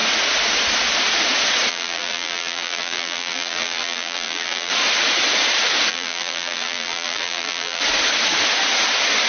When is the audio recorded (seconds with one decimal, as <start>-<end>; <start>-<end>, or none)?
0.0-1.7; 4.7-5.9; 7.8-9.3